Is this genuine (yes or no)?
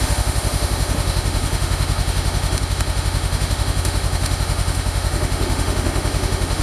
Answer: no